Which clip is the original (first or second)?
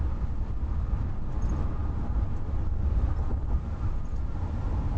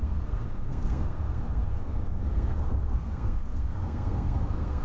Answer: first